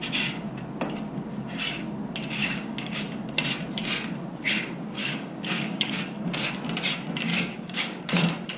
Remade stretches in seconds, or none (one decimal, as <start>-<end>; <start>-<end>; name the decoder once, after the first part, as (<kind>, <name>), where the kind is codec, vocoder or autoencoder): 2.4-3.0 (codec, DAC); 5.0-6.0; 7.3-8.0